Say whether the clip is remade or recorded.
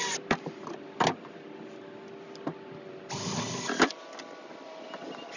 recorded